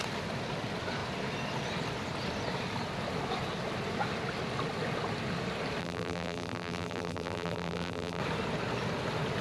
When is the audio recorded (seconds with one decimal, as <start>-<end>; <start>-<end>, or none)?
0.0-5.8; 8.2-9.4